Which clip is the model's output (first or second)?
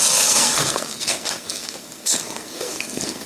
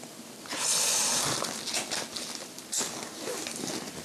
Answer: first